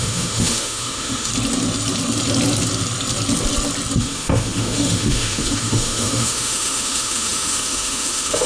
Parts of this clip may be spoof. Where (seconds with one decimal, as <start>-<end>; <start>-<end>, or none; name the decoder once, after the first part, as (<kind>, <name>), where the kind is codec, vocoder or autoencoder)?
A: 0.0-1.3 (autoencoder, DAC-VAE); 4.0-8.5